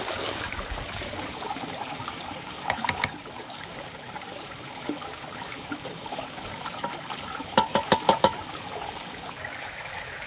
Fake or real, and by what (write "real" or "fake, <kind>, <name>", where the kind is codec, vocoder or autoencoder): fake, codec, DAC